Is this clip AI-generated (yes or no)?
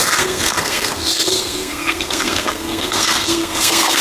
yes